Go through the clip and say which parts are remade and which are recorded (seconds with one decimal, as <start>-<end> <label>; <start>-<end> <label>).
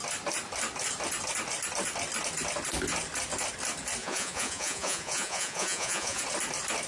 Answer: 0.0-4.0 recorded; 4.0-6.2 remade; 6.2-6.9 recorded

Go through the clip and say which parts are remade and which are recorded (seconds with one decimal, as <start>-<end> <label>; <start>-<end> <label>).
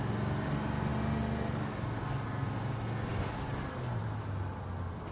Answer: 0.0-5.1 recorded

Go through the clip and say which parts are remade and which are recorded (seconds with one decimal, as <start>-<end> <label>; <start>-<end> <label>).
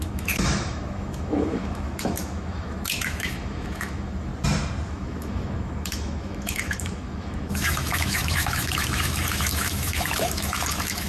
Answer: 0.0-4.3 remade; 4.3-4.9 recorded; 4.9-11.1 remade